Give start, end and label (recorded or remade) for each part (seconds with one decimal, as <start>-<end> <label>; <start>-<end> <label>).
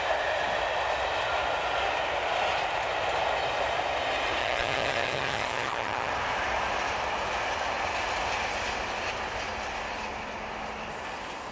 0.0-4.4 recorded; 4.4-6.1 remade; 6.1-11.5 recorded